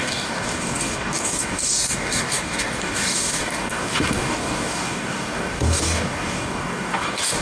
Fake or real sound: fake